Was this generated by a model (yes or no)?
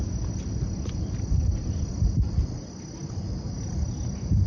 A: no